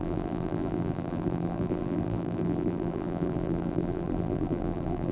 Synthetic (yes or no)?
yes